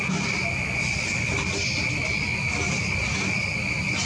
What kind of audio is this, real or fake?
real